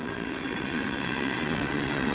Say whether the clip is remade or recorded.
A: remade